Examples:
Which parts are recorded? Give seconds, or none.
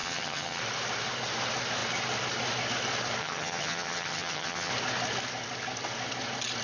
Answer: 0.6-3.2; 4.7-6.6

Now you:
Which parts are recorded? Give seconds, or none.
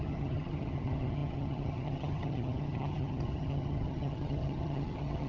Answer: none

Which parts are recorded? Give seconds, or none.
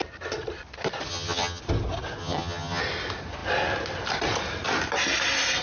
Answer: 0.0-1.1; 1.6-2.2; 2.8-5.6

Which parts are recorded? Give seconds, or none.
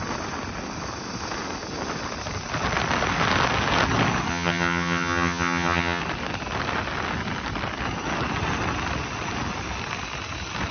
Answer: 0.0-4.3; 6.0-10.7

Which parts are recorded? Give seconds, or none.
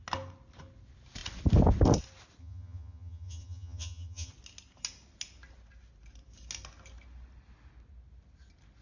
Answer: 0.0-2.4; 4.3-8.8